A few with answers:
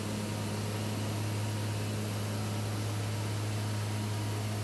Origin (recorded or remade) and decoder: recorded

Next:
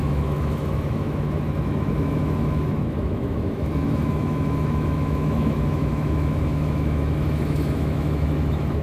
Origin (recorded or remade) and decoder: remade, autoencoder, DAC-VAE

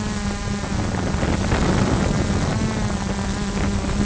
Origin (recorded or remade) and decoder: recorded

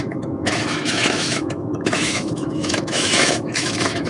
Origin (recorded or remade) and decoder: remade, autoencoder, DAC-VAE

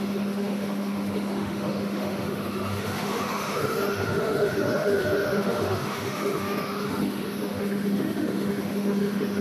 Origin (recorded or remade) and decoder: remade, autoencoder, DAC-VAE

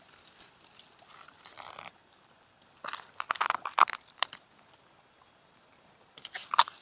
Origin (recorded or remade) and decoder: recorded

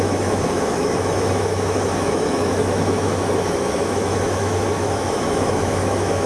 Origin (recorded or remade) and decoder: remade, autoencoder, DAC-VAE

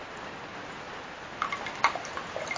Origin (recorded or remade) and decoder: recorded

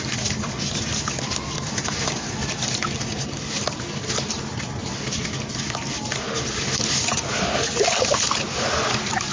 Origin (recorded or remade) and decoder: recorded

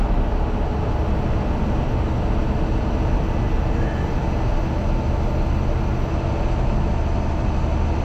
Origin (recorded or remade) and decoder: recorded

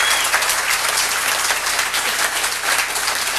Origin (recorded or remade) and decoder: recorded